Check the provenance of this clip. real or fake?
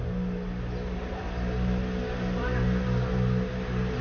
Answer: real